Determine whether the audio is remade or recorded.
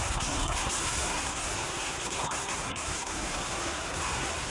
remade